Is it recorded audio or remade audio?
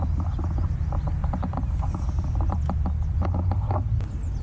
recorded